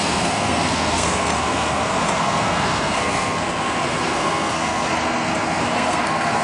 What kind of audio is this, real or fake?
fake